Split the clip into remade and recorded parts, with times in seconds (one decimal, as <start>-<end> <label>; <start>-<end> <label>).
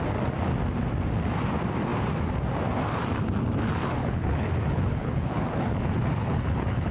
0.0-4.0 recorded; 4.0-6.9 remade